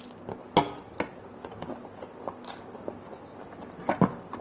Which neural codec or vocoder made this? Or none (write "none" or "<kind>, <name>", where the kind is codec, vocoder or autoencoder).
none